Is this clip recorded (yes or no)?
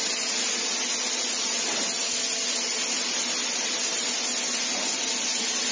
yes